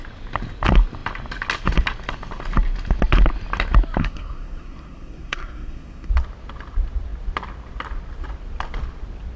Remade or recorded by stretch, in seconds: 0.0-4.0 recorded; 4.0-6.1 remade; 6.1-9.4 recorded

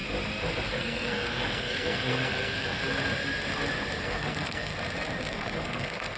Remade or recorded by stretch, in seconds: 0.0-0.7 recorded; 0.7-2.8 remade; 2.8-4.0 recorded; 4.0-4.7 remade; 4.7-5.3 recorded; 5.3-6.2 remade

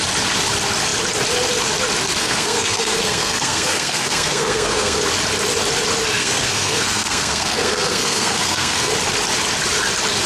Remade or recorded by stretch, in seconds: 0.0-2.2 recorded; 2.2-5.0 remade; 5.0-6.2 recorded; 6.2-8.9 remade; 8.9-10.3 recorded

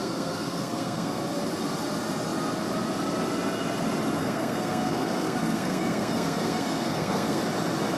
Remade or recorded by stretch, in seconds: 0.0-1.2 remade; 1.2-4.2 recorded; 4.2-7.4 remade; 7.4-8.0 recorded

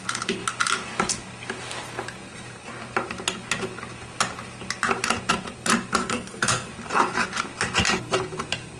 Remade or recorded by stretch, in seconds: 0.0-6.0 recorded; 6.0-6.7 remade; 6.7-8.8 recorded

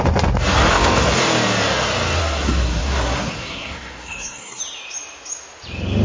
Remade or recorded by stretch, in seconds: 0.0-2.2 recorded; 2.2-4.6 remade; 4.6-6.0 recorded

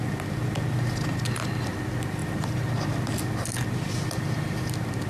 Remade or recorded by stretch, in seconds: 0.0-5.1 recorded